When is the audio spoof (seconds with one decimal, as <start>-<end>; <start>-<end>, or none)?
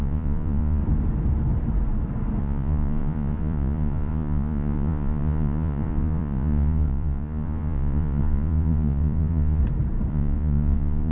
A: 0.0-0.8; 2.4-9.6; 10.1-11.1